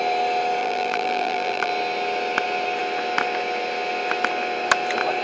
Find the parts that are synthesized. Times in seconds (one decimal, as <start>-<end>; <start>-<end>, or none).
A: 0.6-1.7